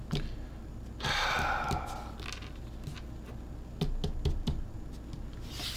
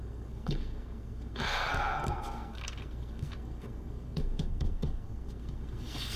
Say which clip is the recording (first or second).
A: first